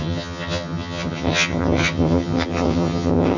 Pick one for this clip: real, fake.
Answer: fake